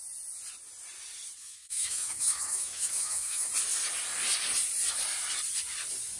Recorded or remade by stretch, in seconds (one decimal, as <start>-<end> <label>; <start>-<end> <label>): 0.0-1.4 recorded; 1.4-3.5 remade; 3.5-6.2 recorded